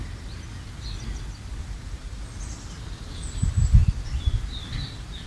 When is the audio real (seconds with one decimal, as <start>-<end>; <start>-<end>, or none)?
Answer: 0.0-1.5; 2.2-5.3